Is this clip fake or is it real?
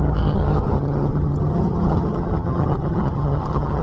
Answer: fake